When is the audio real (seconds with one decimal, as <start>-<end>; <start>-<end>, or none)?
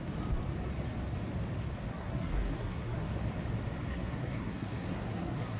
0.0-2.0; 3.1-3.9